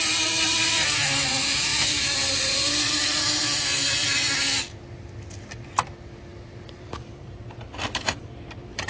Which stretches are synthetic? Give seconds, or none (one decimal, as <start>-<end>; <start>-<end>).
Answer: 1.7-3.2; 6.3-8.2